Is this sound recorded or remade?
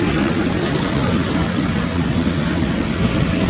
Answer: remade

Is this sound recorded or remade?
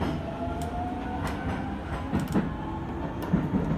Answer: recorded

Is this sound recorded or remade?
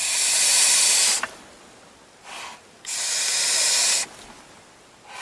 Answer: recorded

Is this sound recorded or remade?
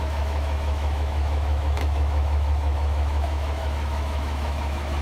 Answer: remade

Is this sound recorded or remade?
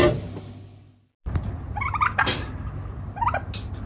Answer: recorded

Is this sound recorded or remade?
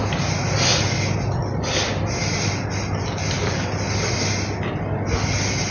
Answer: recorded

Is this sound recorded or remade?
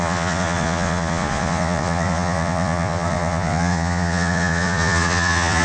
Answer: remade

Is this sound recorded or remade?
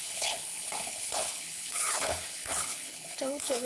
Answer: remade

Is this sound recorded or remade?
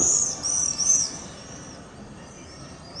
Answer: remade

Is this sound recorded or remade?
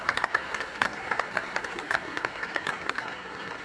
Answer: remade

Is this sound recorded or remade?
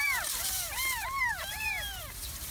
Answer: remade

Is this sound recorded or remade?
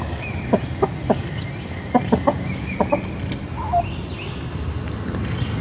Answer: recorded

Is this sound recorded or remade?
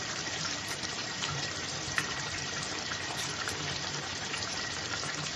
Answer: remade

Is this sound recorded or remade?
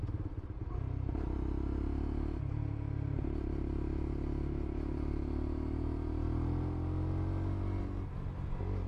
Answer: recorded